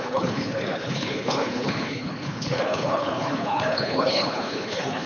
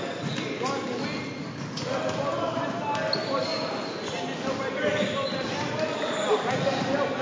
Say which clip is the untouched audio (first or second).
second